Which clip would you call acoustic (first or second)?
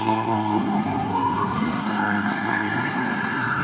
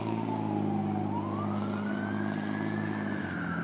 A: second